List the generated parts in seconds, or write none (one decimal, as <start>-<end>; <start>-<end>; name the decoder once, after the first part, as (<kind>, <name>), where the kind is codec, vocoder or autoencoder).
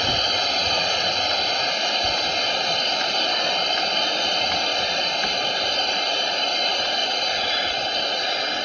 0.6-1.3 (vocoder, Vocos); 7.0-7.7